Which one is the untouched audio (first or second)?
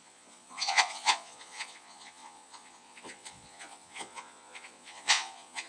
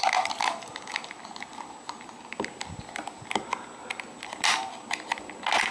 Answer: second